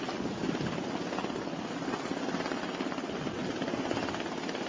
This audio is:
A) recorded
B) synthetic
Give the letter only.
A